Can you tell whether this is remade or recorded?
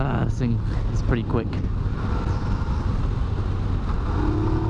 recorded